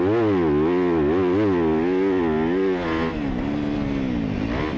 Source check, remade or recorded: recorded